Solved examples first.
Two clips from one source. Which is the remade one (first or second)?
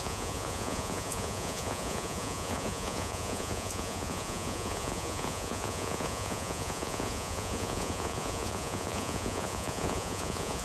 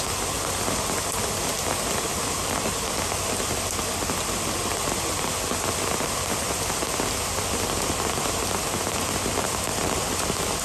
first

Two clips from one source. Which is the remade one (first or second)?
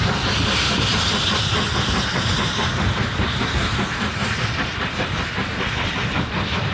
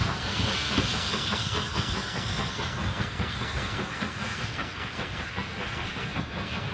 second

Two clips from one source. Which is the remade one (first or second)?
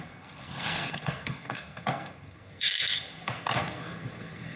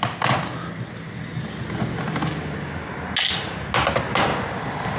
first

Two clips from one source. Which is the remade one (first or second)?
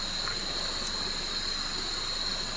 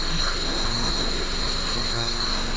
second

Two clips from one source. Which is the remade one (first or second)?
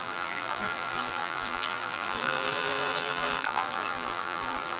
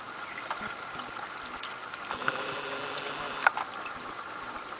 first